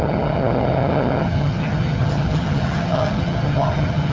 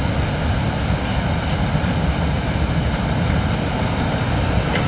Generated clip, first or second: first